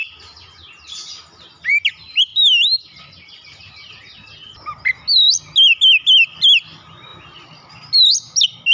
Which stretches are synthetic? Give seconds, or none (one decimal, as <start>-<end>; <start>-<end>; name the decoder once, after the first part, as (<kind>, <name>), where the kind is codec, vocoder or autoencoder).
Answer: none